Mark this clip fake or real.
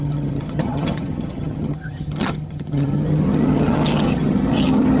fake